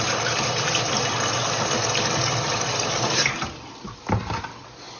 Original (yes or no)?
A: yes